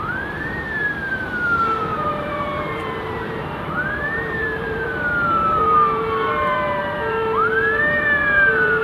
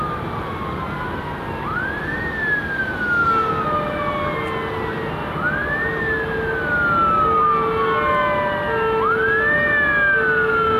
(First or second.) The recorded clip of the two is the second